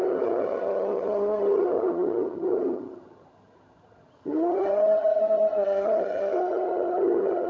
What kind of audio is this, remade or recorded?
remade